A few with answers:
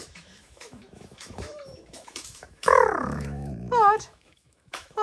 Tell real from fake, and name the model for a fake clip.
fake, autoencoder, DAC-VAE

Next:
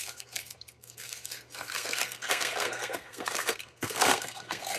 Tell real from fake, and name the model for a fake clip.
fake, codec, SNAC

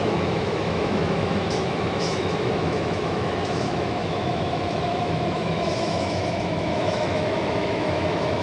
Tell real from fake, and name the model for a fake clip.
fake, autoencoder, DAC-VAE